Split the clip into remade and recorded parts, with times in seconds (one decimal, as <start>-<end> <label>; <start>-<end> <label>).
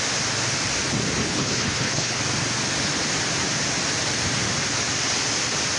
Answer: 0.0-1.2 recorded; 1.2-2.2 remade; 2.2-5.8 recorded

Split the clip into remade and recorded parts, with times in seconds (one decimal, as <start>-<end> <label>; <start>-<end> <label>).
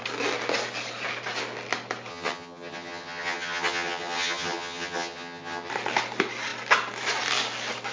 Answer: 0.0-2.1 recorded; 2.1-5.7 remade; 5.7-7.9 recorded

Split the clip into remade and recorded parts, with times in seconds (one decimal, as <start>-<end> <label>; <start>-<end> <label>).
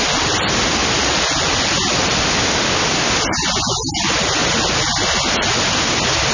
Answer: 0.0-6.3 recorded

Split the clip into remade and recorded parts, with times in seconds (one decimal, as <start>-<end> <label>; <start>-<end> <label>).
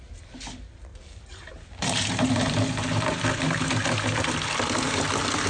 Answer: 0.0-0.9 recorded; 0.9-4.2 remade; 4.2-5.5 recorded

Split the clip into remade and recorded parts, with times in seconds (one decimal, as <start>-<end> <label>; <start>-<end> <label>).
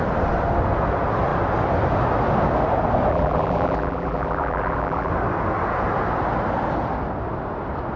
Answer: 0.0-3.1 recorded; 3.1-5.1 remade; 5.1-8.0 recorded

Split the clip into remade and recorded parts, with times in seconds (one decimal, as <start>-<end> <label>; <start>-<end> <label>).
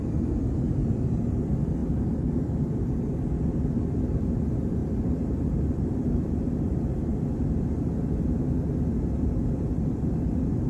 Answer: 0.0-4.8 recorded; 4.8-7.3 remade; 7.3-10.7 recorded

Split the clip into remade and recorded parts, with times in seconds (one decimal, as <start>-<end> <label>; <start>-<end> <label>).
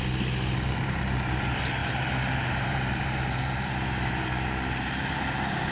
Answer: 0.0-1.8 recorded; 1.8-5.2 remade; 5.2-5.7 recorded